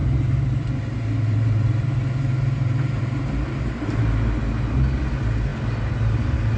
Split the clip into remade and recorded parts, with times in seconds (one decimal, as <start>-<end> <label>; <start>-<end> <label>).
0.0-4.0 remade; 4.0-6.6 recorded